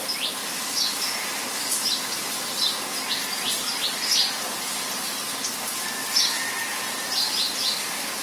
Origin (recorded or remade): recorded